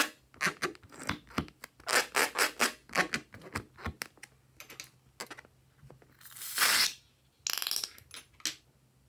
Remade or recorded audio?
recorded